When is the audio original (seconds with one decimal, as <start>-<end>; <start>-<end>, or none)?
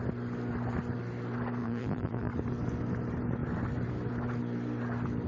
0.0-1.6; 2.3-5.3